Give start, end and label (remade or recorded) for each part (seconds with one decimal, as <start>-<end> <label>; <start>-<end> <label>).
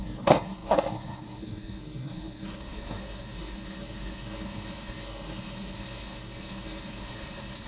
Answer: 0.0-7.7 remade